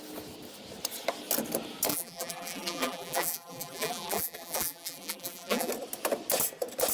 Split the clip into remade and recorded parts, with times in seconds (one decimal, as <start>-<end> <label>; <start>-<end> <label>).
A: 0.0-1.9 recorded; 1.9-5.7 remade; 5.7-6.9 recorded